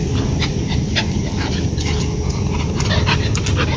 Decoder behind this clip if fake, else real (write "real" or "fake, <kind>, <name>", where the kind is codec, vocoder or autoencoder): real